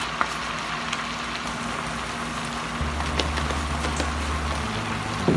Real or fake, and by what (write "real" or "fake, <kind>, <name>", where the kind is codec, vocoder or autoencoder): real